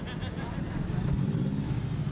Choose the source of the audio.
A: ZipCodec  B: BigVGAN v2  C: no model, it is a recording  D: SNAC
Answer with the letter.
C